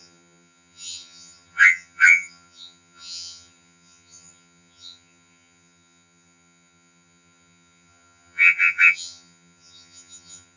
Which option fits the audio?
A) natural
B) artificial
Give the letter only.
B